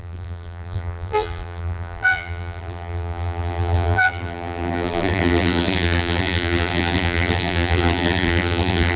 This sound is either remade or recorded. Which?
remade